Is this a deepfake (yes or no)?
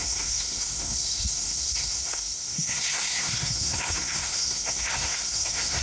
yes